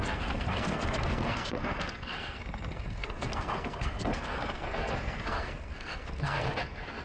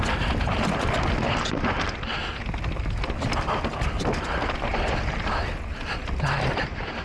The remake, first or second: first